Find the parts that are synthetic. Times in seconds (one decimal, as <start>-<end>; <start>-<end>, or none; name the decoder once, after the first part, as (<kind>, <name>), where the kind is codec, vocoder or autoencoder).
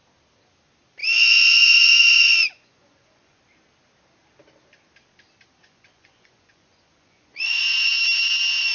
1.0-3.4 (vocoder, Vocos); 5.6-7.6